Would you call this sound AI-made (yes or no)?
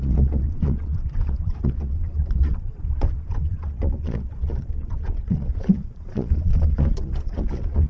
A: yes